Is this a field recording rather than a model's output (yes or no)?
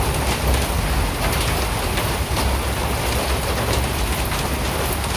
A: yes